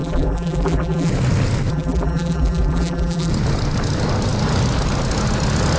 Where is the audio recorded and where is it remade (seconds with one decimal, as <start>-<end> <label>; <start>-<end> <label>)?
0.0-1.1 remade; 1.1-1.7 recorded; 1.7-3.3 remade; 3.3-5.8 recorded